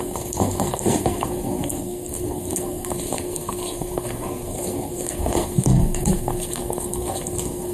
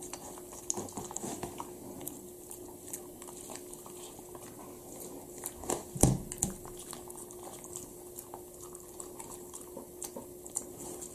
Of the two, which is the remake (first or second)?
first